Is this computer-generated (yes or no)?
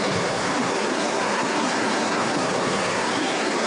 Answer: yes